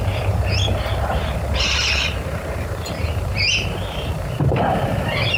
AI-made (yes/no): yes